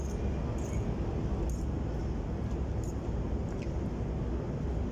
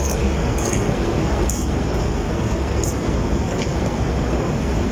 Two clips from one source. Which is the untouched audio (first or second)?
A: first